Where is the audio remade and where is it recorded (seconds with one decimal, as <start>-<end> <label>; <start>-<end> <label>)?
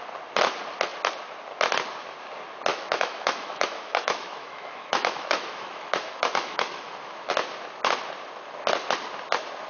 0.0-2.7 recorded; 2.7-7.3 remade; 7.3-9.7 recorded